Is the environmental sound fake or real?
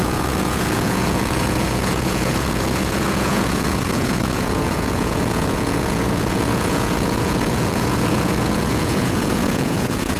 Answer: fake